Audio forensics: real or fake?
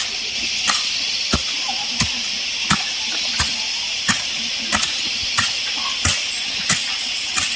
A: real